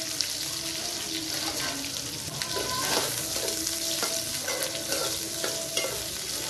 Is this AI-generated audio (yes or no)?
no